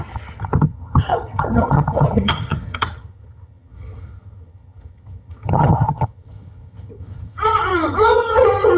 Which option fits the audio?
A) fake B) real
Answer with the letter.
A